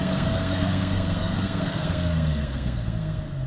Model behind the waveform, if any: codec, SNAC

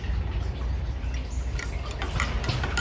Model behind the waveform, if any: none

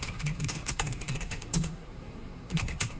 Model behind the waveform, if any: codec, SNAC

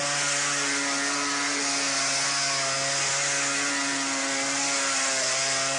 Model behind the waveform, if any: none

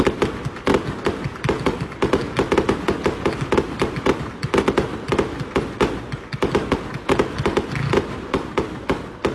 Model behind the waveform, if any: none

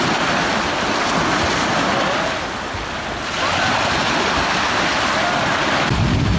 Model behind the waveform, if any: none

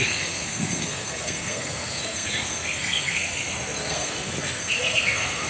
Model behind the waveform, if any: codec, SNAC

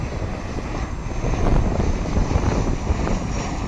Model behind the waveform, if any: none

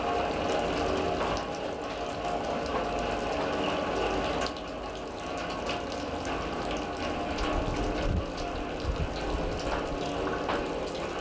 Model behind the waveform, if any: none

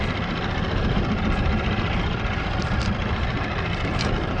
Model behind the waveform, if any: none